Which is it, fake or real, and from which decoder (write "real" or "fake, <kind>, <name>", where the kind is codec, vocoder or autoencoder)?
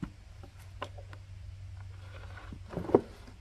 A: real